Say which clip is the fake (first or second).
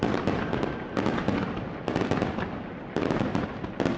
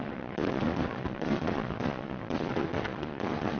second